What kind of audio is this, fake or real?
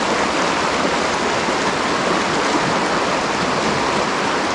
real